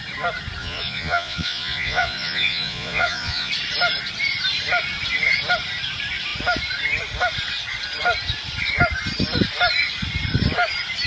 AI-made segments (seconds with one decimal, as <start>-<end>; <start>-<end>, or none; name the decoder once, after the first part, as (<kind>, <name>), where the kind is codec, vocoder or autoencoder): 0.6-3.5 (vocoder, Vocos)

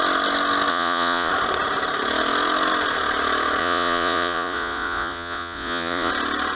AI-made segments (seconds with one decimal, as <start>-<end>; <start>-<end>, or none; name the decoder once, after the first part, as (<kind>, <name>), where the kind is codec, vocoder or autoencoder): 0.7-1.3 (vocoder, Vocos); 3.6-6.1

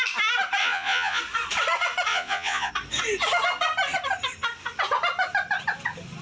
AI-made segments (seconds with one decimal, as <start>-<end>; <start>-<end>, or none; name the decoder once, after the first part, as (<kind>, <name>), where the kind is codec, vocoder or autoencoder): 0.6-1.2 (vocoder, Vocos); 2.1-2.7